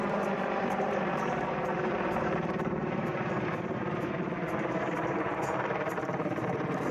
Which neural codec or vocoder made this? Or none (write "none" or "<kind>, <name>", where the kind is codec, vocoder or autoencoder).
vocoder, BigVGAN v2